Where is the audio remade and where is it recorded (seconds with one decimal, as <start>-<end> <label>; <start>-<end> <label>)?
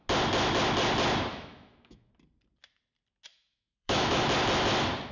0.0-1.3 recorded; 1.3-2.1 remade; 2.1-3.3 recorded; 3.3-4.2 remade; 4.2-5.1 recorded